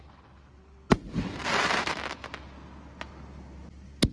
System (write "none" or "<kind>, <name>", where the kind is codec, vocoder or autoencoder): none